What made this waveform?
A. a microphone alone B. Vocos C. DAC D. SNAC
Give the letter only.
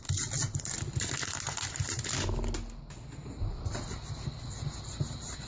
A